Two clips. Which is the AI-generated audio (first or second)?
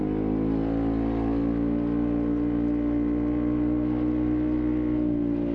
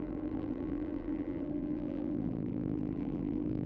second